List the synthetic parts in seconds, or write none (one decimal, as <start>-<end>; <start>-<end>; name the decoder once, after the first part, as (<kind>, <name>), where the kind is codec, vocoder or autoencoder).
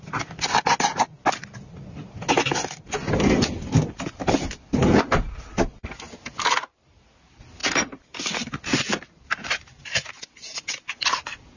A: none